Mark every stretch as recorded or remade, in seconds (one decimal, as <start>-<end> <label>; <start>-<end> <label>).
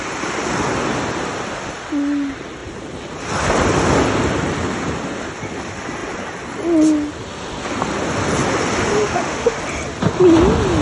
0.0-9.0 recorded; 9.0-9.6 remade; 9.6-10.8 recorded